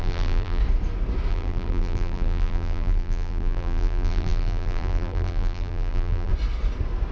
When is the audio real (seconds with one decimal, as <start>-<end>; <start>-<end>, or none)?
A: 0.6-1.3; 6.3-7.1